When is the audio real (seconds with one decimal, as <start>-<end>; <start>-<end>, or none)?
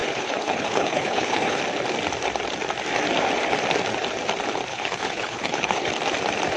1.6-4.7; 5.9-6.6